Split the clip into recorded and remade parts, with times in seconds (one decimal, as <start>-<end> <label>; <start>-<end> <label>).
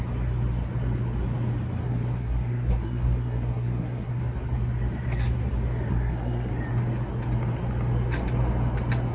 0.0-1.8 recorded; 1.8-4.2 remade; 4.2-5.9 recorded; 5.9-6.5 remade; 6.5-9.1 recorded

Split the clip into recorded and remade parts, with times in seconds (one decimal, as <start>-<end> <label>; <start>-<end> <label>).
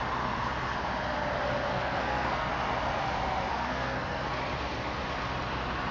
0.0-1.7 recorded; 1.7-2.5 remade; 2.5-3.5 recorded; 3.5-4.3 remade; 4.3-5.9 recorded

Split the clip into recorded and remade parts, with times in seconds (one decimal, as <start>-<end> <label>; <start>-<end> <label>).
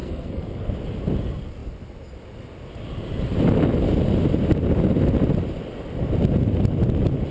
0.0-0.7 remade; 0.7-7.3 recorded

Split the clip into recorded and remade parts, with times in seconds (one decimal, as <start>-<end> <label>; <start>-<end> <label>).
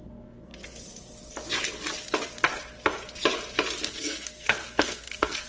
0.0-0.5 remade; 0.5-3.8 recorded; 3.8-5.5 remade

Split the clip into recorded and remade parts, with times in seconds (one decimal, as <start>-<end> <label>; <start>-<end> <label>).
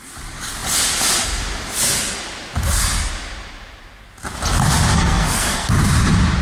0.0-4.9 recorded; 4.9-5.7 remade; 5.7-6.4 recorded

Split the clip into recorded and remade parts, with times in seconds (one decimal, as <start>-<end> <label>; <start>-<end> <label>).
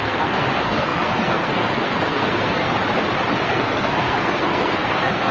0.0-2.7 remade; 2.7-3.3 recorded; 3.3-5.3 remade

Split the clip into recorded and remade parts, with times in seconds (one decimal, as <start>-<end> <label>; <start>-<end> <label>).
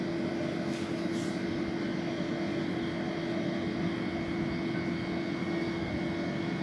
0.0-5.4 recorded; 5.4-5.9 remade; 5.9-6.6 recorded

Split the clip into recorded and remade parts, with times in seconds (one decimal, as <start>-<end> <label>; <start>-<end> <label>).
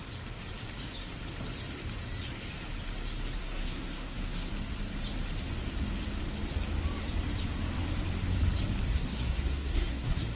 0.0-3.4 recorded; 3.4-4.5 remade; 4.5-8.9 recorded; 8.9-10.4 remade